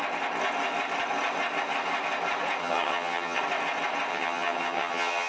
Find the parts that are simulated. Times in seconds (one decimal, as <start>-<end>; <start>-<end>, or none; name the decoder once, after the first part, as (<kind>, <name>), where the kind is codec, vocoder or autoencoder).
2.6-3.4 (vocoder, HiFi-GAN); 4.1-5.3